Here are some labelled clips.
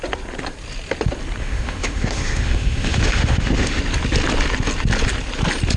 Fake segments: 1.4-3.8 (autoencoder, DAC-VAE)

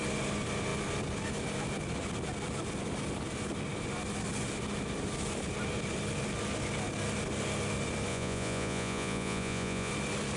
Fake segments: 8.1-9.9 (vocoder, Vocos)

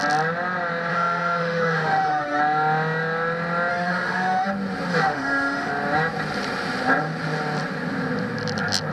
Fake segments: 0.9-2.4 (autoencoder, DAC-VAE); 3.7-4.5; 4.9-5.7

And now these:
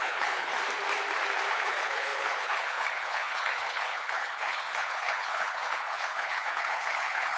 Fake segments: 0.0-0.5 (codec, HILCodec); 1.5-7.4

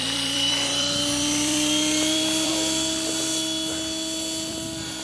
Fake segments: 0.0-2.5 (vocoder, BigVGAN v2); 4.5-5.0

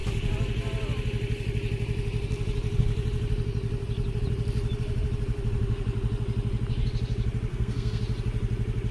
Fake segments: 7.5-8.0 (codec, SNAC)